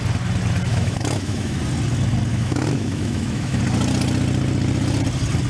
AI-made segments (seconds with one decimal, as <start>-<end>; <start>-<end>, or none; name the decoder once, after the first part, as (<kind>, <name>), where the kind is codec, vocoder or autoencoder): 0.7-1.6 (autoencoder, DAC-VAE); 2.3-3.6